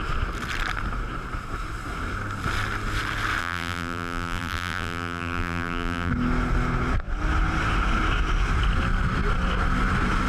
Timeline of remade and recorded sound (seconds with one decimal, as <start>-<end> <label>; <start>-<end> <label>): 0.0-3.4 recorded; 3.4-6.1 remade; 6.1-10.3 recorded